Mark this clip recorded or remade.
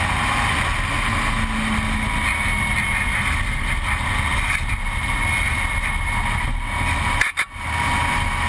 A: recorded